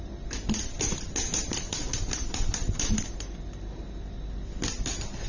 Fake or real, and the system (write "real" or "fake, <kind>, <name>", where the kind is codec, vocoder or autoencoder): real